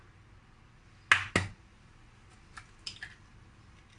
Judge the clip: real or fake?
real